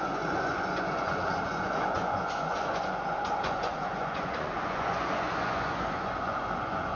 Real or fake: fake